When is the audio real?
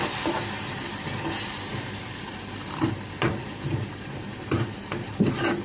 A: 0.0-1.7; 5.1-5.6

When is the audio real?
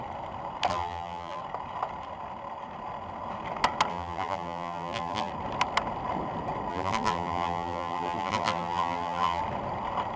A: 0.0-0.7; 1.4-3.9; 5.3-6.7; 9.4-10.2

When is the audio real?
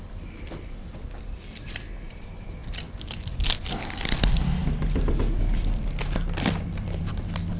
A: none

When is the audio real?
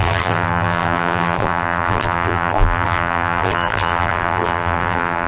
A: none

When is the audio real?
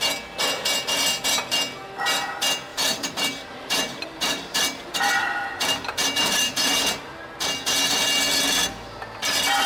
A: 0.0-2.7; 7.0-9.7